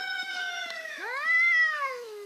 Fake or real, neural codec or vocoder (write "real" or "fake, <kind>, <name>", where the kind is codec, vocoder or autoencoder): fake, autoencoder, DAC-VAE